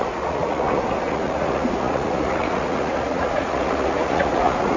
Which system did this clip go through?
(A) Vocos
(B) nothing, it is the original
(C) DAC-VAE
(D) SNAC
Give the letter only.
A